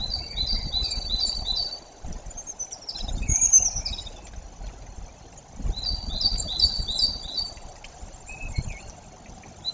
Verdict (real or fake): real